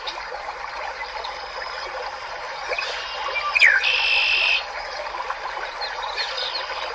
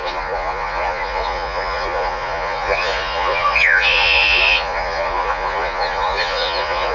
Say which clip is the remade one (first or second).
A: second